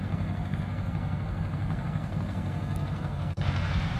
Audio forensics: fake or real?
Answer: fake